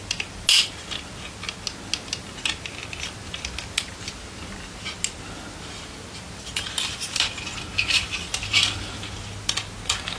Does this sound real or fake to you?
real